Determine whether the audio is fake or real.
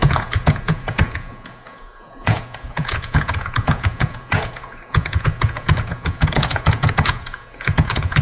fake